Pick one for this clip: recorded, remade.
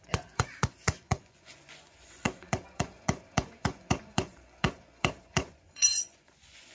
remade